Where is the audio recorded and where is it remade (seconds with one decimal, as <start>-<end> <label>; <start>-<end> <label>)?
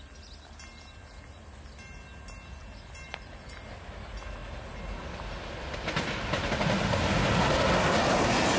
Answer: 0.0-8.6 recorded